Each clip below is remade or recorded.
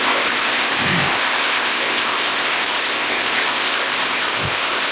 remade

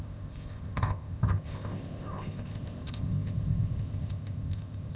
remade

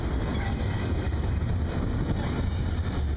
recorded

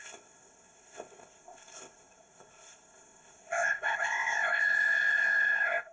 remade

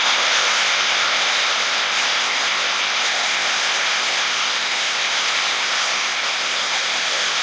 remade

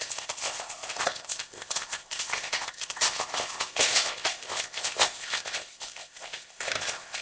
remade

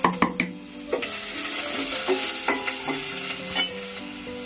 recorded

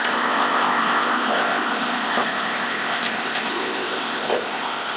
remade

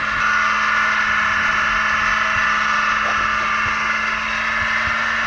recorded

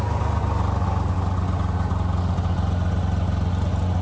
recorded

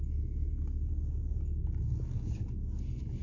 recorded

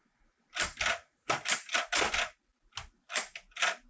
recorded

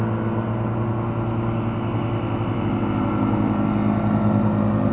recorded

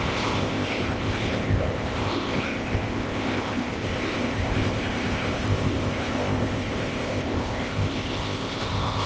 remade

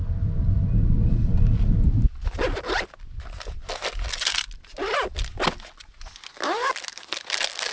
recorded